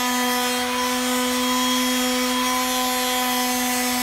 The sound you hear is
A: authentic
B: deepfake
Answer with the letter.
A